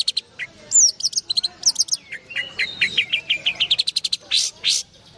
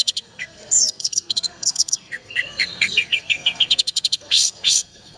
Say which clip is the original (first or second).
first